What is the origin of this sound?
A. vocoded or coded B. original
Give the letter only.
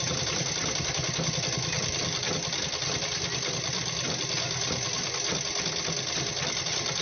B